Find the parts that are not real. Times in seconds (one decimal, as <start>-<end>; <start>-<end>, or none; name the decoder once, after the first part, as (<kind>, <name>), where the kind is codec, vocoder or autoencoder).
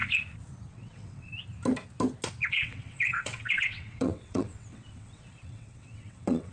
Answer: 0.7-1.3 (vocoder, WaveNeXt); 2.5-6.5